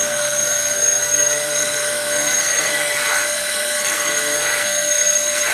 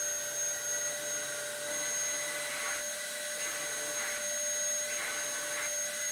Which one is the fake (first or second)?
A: first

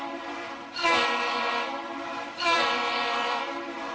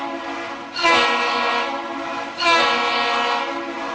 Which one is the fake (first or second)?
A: first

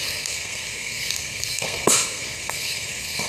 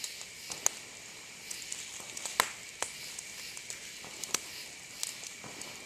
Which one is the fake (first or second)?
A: first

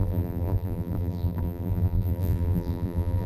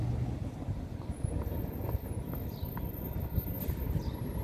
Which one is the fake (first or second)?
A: first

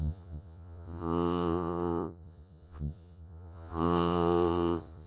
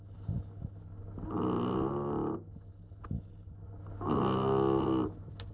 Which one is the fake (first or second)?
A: first